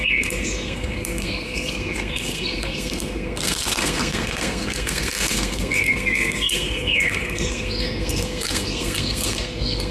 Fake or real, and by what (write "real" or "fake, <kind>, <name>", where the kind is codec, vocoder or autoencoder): fake, codec, SNAC